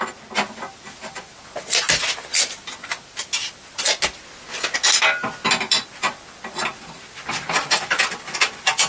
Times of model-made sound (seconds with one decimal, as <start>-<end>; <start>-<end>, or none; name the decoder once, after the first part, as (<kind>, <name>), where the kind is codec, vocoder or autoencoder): none